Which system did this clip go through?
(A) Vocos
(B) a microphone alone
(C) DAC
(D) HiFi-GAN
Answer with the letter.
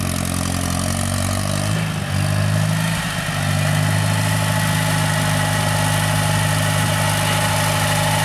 B